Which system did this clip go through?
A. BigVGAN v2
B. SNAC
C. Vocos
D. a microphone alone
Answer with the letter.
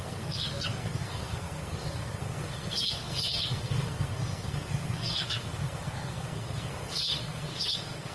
B